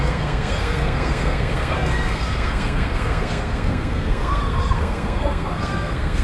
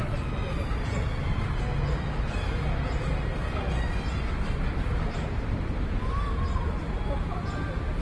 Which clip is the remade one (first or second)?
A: first